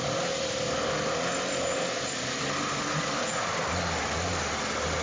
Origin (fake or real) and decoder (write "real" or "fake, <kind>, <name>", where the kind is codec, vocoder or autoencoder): real